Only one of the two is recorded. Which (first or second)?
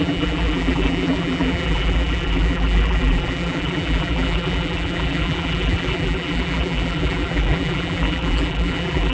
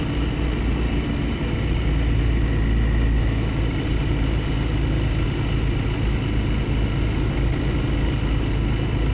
second